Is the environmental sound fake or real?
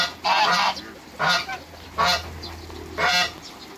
real